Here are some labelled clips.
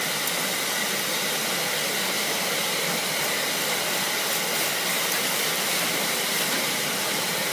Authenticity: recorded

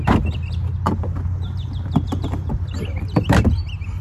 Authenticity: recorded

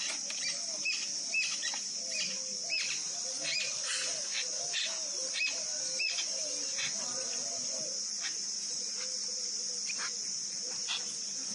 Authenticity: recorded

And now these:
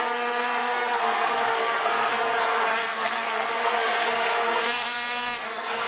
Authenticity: remade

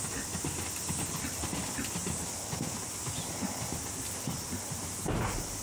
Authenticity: recorded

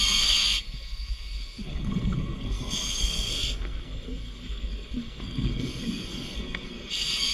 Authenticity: remade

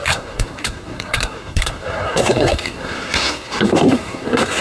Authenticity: remade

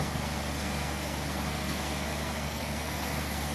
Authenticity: remade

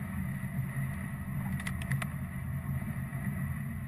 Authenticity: recorded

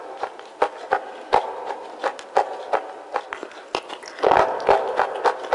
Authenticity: recorded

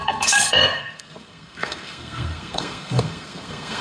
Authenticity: remade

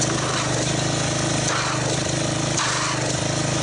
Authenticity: recorded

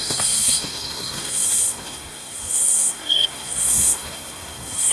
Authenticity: remade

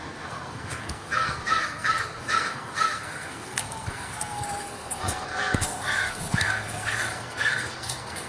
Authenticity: remade